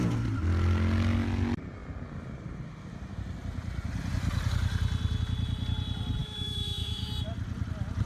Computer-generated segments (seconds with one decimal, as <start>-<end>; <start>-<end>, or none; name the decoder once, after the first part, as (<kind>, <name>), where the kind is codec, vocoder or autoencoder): 6.2-7.1 (autoencoder, DAC-VAE)